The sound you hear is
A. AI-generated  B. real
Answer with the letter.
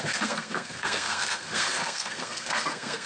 A